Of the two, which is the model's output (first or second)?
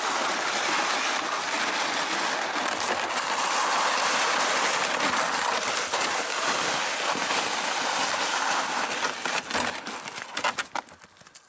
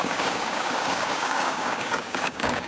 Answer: second